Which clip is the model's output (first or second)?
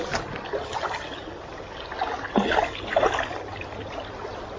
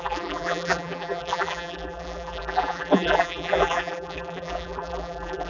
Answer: second